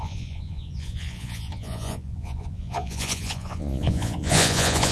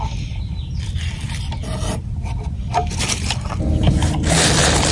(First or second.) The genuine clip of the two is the second